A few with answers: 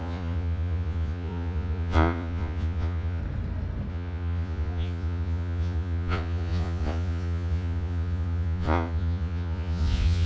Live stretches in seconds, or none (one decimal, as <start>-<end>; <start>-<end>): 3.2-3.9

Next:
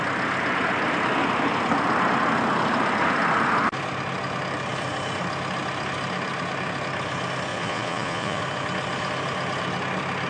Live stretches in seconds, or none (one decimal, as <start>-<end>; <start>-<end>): 0.0-7.5; 8.4-10.3

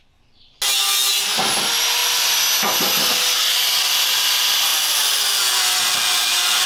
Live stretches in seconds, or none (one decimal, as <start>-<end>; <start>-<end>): 0.0-6.7

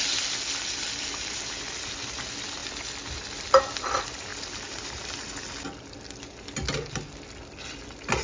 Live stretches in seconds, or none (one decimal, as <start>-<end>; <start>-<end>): 0.0-8.2